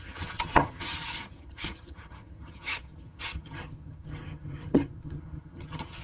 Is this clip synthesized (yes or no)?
yes